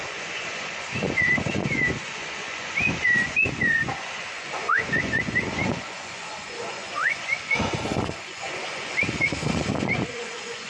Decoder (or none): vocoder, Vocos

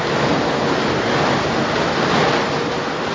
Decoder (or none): none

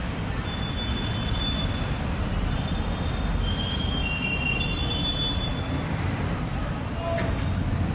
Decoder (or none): none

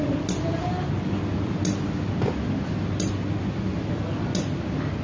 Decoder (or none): none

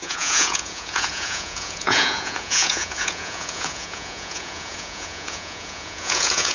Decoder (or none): vocoder, Vocos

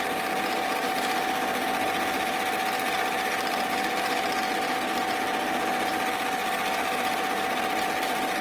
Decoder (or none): none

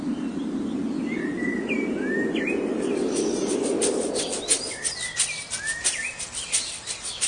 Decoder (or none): none